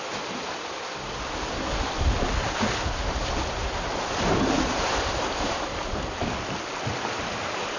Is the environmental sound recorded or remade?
recorded